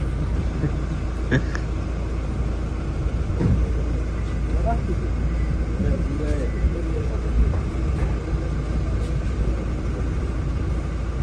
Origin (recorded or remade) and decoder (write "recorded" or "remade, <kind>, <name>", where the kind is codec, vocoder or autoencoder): recorded